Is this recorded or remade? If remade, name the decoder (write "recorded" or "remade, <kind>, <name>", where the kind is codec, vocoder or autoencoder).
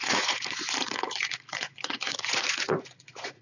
remade, vocoder, Vocos